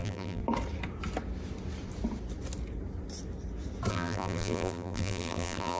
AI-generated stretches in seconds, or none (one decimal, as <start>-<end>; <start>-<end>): 0.0-0.4; 3.9-5.8